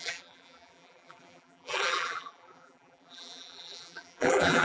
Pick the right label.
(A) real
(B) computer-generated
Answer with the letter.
B